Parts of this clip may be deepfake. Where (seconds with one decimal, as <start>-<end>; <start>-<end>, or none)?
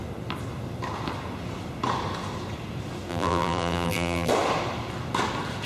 3.1-4.3